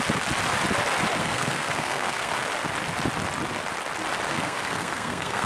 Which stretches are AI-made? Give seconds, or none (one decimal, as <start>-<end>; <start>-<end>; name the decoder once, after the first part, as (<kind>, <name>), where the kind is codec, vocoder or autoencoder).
1.2-2.3 (codec, SNAC); 4.3-5.5